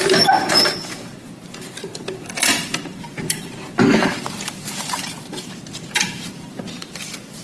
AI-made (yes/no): yes